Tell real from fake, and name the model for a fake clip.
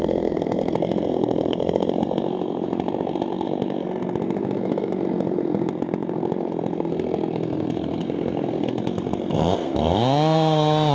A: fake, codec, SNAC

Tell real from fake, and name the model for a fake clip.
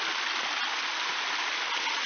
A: real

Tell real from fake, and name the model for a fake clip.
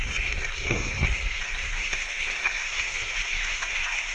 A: fake, codec, SNAC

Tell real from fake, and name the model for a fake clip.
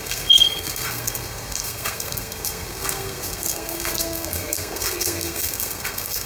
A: fake, codec, SNAC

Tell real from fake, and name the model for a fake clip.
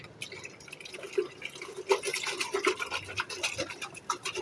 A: real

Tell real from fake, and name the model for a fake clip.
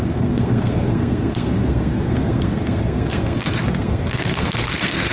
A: fake, codec, SNAC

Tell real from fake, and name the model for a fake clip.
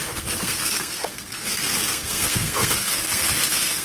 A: fake, codec, SNAC